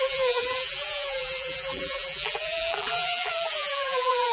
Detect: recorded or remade remade